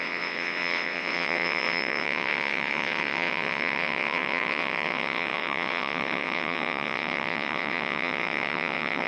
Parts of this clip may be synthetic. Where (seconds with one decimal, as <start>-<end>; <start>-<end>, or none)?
0.0-9.1